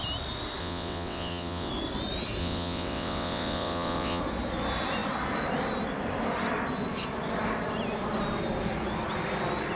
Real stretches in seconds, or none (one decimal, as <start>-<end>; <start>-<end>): 0.0-0.6; 1.7-2.4; 4.2-9.8